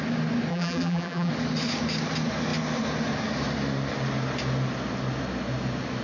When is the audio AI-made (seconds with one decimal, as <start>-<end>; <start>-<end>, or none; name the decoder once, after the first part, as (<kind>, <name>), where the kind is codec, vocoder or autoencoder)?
0.5-1.3 (vocoder, BigVGAN v2)